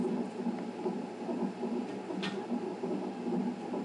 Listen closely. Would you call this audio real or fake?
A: real